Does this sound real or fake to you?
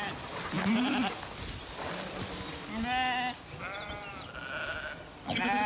real